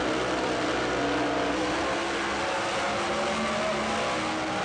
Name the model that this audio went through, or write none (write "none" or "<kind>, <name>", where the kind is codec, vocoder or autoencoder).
none